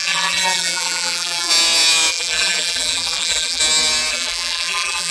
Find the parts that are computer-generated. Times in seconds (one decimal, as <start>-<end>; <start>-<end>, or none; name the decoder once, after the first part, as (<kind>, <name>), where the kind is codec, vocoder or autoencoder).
0.0-1.5 (vocoder, BigVGAN v2); 2.1-3.6; 4.1-5.1